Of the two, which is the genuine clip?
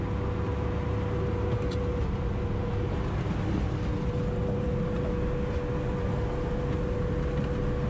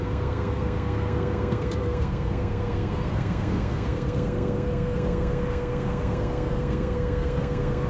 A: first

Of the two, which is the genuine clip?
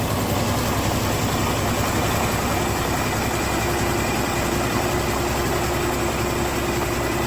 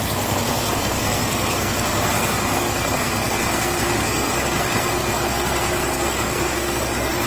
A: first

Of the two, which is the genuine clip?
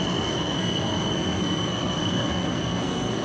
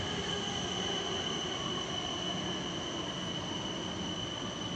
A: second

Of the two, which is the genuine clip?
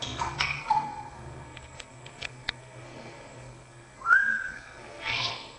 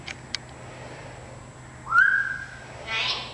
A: second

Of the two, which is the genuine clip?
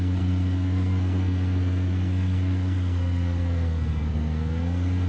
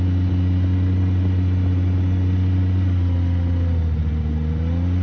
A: second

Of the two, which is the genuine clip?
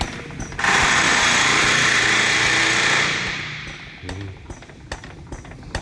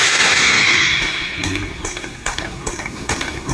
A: first